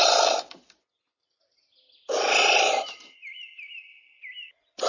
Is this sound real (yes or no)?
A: yes